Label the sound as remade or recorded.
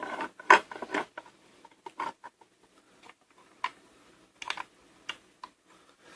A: recorded